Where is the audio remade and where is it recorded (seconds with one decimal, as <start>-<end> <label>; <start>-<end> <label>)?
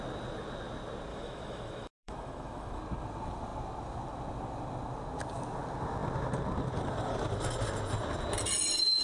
0.0-1.1 recorded; 1.1-2.8 remade; 2.8-9.0 recorded